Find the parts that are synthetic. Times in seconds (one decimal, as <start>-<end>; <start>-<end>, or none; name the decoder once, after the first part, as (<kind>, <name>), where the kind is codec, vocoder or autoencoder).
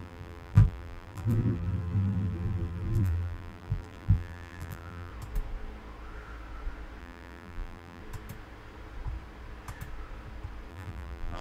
0.0-5.1 (vocoder, BigVGAN v2); 7.0-8.0; 10.7-11.4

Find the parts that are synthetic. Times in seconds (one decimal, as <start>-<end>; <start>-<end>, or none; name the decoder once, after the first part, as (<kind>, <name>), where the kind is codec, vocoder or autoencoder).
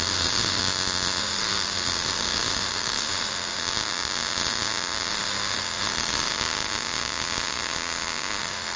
0.0-0.6 (autoencoder, DAC-VAE); 1.2-3.6; 5.1-6.3; 8.4-8.8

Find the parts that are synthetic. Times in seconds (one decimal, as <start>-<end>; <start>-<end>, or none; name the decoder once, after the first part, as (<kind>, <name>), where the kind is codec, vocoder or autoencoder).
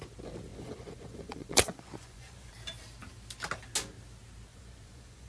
0.5-2.5 (vocoder, Vocos); 4.5-5.3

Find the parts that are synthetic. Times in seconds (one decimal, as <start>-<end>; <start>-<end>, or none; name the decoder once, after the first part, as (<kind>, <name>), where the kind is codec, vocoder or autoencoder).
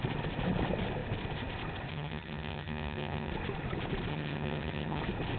1.9-3.3 (vocoder, HiFi-GAN); 4.1-5.0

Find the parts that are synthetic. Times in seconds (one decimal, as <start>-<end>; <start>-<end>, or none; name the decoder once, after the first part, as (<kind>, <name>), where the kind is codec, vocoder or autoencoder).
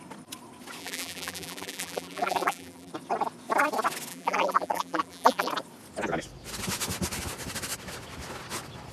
0.8-2.9 (vocoder, BigVGAN v2); 4.1-5.5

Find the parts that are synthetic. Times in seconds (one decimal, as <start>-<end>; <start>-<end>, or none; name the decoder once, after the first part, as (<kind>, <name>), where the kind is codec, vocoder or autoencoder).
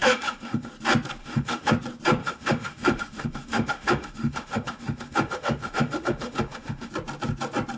0.0-0.7 (autoencoder, DAC-VAE); 1.2-1.7; 2.2-6.9